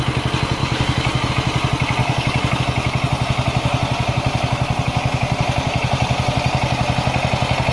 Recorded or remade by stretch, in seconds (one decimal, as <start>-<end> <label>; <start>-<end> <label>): 0.0-0.6 recorded; 0.6-1.3 remade; 1.3-2.0 recorded; 2.0-2.6 remade; 2.6-7.7 recorded